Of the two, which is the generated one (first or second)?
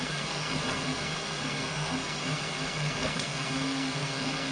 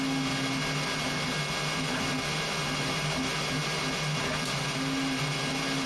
first